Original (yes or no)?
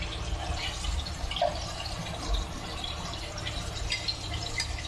yes